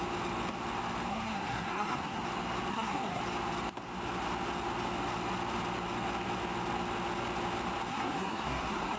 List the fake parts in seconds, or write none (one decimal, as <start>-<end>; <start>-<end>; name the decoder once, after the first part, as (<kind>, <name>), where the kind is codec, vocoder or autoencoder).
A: 1.1-2.2 (codec, SNAC); 2.7-3.2; 7.9-9.0